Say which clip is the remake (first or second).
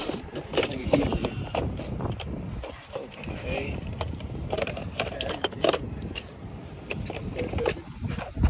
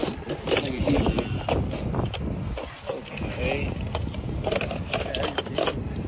first